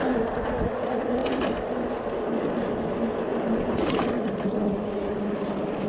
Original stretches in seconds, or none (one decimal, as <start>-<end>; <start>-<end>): 0.0-3.3; 4.1-5.9